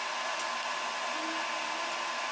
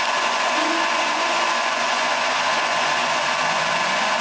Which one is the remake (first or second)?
second